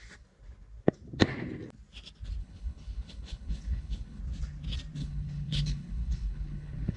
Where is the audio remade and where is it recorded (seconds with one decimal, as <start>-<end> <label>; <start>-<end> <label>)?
0.0-2.4 recorded; 2.4-4.2 remade; 4.2-5.0 recorded; 5.0-7.0 remade